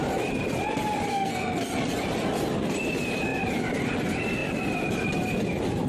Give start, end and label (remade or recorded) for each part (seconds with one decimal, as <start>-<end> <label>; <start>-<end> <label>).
0.0-1.1 recorded; 1.1-1.6 remade; 1.6-5.9 recorded